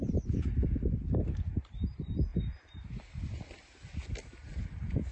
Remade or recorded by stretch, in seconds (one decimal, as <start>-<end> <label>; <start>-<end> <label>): 0.0-5.1 recorded